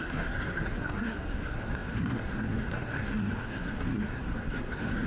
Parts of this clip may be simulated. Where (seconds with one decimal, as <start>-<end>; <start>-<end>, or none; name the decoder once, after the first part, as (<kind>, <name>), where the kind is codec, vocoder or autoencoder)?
0.0-5.1 (codec, SNAC)

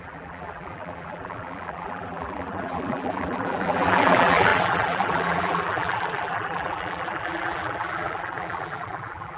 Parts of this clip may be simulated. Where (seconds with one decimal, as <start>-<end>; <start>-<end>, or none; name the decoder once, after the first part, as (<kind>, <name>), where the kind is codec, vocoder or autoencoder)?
0.0-9.4 (vocoder, BigVGAN v2)

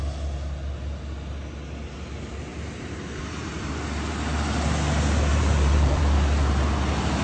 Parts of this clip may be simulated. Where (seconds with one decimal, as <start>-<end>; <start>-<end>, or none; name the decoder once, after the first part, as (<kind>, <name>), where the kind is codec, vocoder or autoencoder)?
2.5-3.7 (vocoder, BigVGAN v2); 5.3-6.0

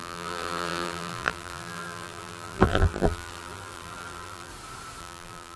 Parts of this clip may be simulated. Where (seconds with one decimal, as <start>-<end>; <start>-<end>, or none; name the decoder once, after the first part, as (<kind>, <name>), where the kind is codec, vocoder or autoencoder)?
0.0-4.5 (vocoder, BigVGAN v2); 5.0-5.6